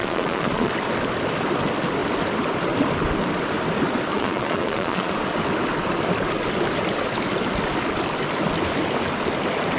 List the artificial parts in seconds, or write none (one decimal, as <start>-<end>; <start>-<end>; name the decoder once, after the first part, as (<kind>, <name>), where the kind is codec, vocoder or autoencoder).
0.0-0.7 (vocoder, Vocos); 4.1-5.1

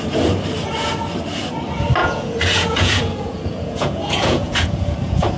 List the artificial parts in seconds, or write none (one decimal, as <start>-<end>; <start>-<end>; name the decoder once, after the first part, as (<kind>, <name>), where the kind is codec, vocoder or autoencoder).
2.0-5.4 (vocoder, Vocos)

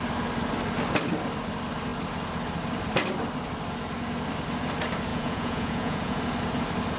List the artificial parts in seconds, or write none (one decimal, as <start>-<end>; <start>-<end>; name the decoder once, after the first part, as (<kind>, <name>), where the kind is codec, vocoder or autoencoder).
5.1-6.2 (vocoder, Vocos)

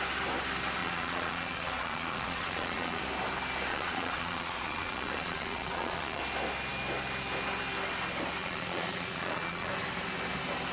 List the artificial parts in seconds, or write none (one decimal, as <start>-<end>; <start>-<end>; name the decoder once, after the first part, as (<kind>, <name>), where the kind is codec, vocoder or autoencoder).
0.8-3.0 (vocoder, Vocos); 3.7-6.2; 8.4-9.7

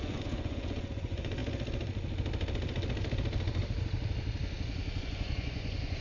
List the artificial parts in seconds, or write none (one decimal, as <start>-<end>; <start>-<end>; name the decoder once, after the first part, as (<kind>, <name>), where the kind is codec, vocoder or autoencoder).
0.0-1.4 (vocoder, Vocos); 5.0-6.0

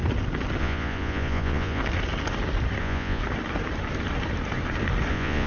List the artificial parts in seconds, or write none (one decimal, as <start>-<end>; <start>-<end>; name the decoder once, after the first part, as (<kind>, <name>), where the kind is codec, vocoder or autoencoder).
0.6-1.8 (vocoder, Vocos); 2.8-3.2; 5.1-5.5